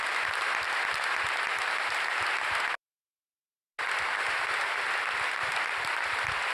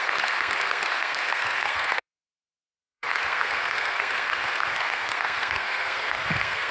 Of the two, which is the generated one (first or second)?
second